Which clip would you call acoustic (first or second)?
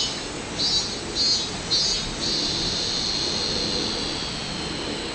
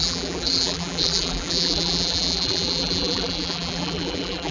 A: first